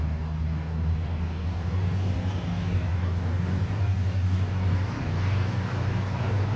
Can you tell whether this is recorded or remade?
remade